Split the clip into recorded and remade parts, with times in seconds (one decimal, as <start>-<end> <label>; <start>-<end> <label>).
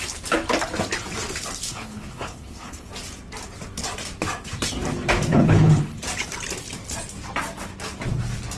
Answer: 0.0-1.6 recorded; 1.6-2.9 remade; 2.9-5.3 recorded; 5.3-6.0 remade; 6.0-8.6 recorded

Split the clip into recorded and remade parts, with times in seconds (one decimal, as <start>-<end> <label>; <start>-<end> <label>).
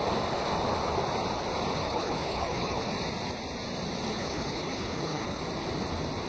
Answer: 0.0-1.8 recorded; 1.8-2.9 remade; 2.9-4.1 recorded; 4.1-5.4 remade; 5.4-6.3 recorded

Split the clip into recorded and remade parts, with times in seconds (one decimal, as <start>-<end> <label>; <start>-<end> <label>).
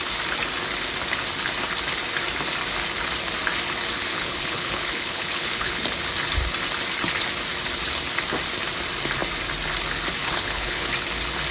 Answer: 0.0-4.1 recorded; 4.1-5.8 remade; 5.8-10.2 recorded; 10.2-10.9 remade; 10.9-11.5 recorded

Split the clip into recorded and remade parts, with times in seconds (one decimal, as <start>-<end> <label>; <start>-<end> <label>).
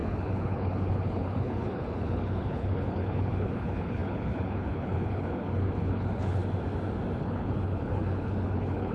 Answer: 0.0-6.4 remade; 6.4-7.2 recorded; 7.2-8.9 remade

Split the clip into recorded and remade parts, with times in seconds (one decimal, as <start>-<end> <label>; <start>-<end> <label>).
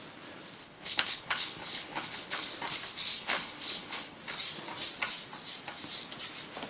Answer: 0.0-0.6 recorded; 0.6-2.5 remade; 2.5-3.1 recorded; 3.1-4.2 remade; 4.2-6.7 recorded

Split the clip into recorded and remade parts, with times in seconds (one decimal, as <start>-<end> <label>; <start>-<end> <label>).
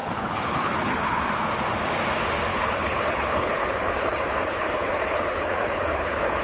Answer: 0.0-1.2 remade; 1.2-2.5 recorded; 2.5-6.4 remade